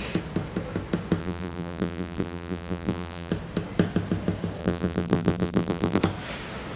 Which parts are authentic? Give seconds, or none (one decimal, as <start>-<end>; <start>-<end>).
0.0-1.2; 3.3-4.6; 6.0-6.8